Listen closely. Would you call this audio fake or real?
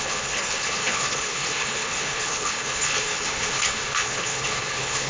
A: fake